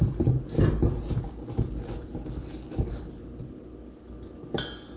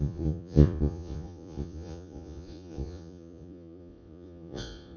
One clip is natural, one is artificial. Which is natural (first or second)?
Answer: first